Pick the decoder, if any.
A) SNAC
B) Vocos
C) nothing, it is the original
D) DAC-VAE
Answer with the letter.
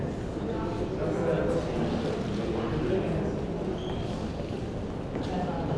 C